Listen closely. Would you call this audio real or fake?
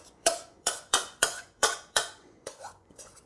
fake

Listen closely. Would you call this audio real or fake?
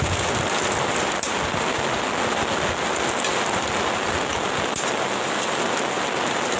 real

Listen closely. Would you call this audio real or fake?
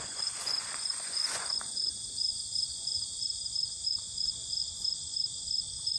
fake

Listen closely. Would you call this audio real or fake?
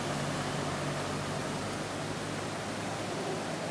real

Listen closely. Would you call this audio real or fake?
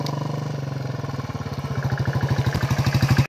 real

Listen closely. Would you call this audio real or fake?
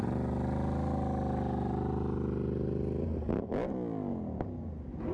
real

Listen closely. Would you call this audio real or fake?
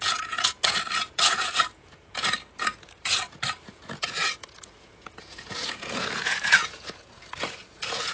fake